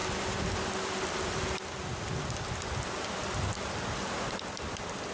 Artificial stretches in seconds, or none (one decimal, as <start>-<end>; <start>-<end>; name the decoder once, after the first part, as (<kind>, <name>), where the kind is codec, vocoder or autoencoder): none